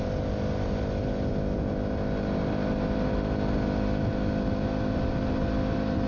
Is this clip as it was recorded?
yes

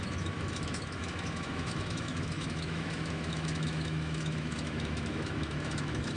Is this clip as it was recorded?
no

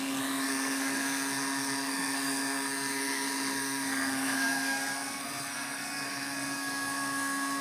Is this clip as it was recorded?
no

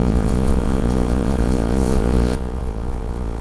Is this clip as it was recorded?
no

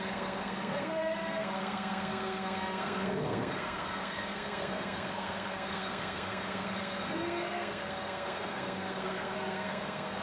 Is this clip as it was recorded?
no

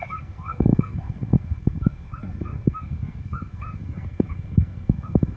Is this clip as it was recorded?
no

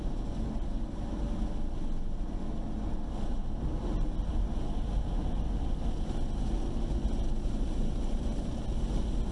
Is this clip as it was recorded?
yes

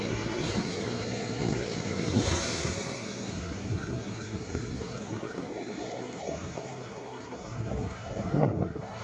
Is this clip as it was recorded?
no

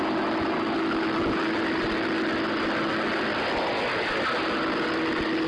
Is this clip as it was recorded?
yes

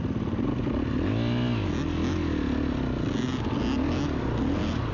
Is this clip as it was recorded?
yes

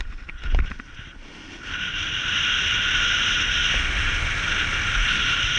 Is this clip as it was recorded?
yes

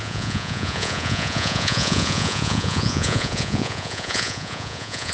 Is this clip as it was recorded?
no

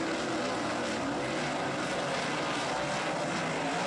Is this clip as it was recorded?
yes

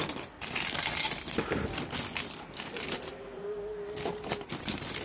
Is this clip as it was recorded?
yes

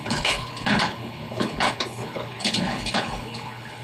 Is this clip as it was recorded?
no